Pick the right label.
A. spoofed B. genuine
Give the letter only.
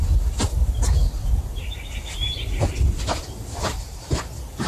B